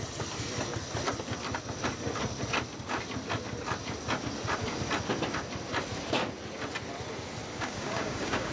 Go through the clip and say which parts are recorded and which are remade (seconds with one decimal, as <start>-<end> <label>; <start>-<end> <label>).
0.0-7.5 recorded; 7.5-8.5 remade